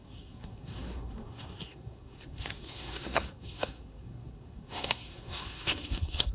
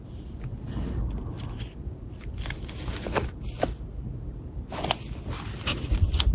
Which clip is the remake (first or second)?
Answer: first